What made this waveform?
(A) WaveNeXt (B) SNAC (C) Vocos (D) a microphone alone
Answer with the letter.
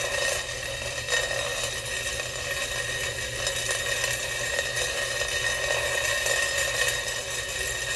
D